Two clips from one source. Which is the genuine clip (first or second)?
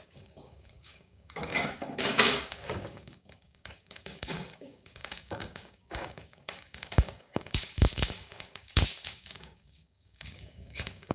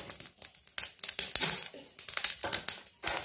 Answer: second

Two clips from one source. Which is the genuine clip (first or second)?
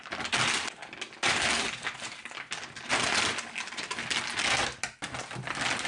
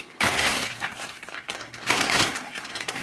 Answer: first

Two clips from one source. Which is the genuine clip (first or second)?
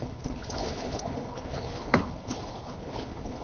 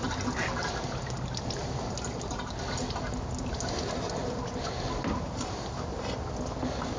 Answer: second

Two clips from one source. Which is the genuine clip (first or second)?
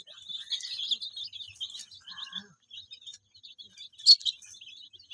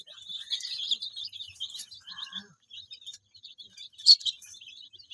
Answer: first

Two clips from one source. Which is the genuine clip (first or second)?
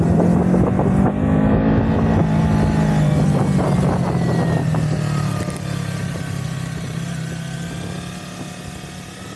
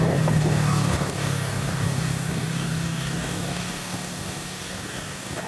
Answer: first